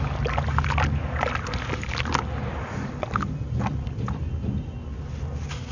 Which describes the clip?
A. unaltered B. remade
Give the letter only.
A